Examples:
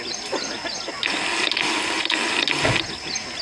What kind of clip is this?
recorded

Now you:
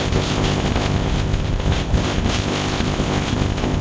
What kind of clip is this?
remade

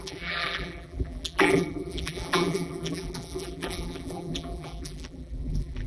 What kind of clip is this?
remade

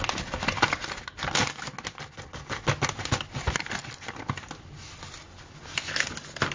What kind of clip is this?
recorded